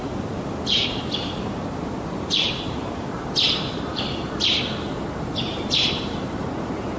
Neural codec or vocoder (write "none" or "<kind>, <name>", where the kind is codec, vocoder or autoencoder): vocoder, BigVGAN v2